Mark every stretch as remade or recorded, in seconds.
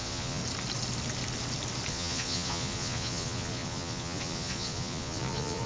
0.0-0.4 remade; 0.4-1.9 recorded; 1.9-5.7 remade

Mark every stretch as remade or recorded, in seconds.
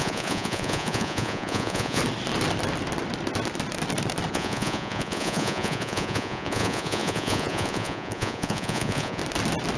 0.0-2.0 remade; 2.0-4.3 recorded; 4.3-9.2 remade; 9.2-9.8 recorded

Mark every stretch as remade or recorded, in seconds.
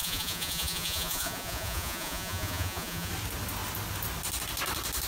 0.0-3.1 remade; 3.1-5.1 recorded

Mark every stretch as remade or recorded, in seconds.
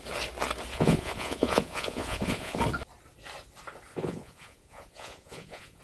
0.0-0.7 recorded; 0.7-2.6 remade; 2.6-3.9 recorded; 3.9-5.8 remade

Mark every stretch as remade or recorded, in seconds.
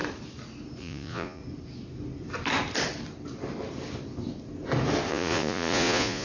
0.0-0.8 recorded; 0.8-1.4 remade; 1.4-5.1 recorded; 5.1-6.2 remade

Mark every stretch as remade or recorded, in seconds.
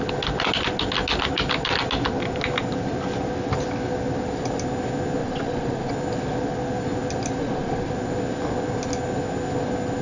0.0-5.2 recorded; 5.2-5.9 remade; 5.9-7.4 recorded; 7.4-7.9 remade; 7.9-10.0 recorded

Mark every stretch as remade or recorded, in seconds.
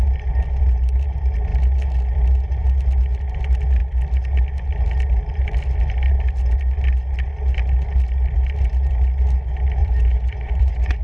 0.0-9.8 recorded; 9.8-11.0 remade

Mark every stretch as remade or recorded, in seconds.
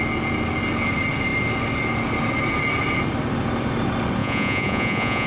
0.0-4.2 recorded; 4.2-5.3 remade